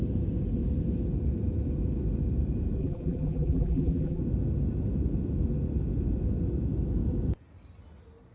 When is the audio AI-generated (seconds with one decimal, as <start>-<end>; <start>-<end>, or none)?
2.8-4.2